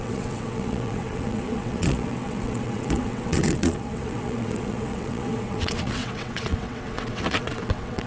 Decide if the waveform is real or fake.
fake